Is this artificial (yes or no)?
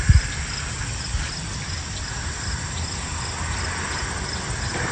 yes